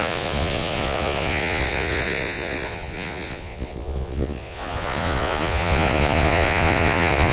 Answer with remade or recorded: remade